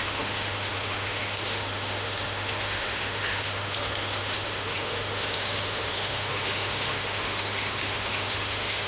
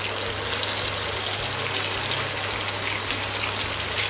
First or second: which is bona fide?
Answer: second